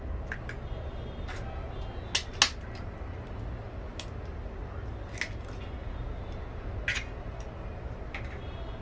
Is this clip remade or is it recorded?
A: recorded